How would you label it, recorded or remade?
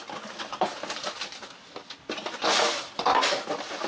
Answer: recorded